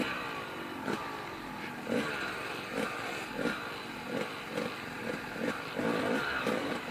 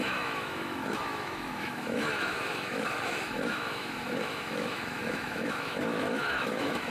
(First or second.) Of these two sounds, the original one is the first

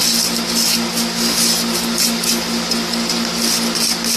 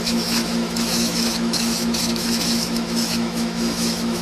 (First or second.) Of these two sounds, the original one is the first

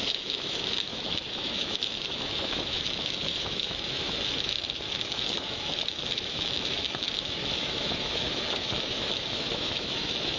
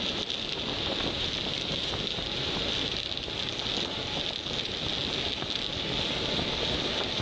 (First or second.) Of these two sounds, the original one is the second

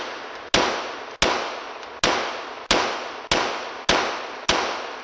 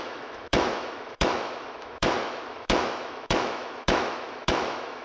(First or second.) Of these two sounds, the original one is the first